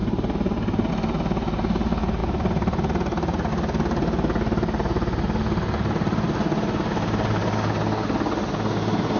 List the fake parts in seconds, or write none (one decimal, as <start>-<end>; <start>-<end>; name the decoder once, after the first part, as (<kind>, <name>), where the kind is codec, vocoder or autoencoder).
none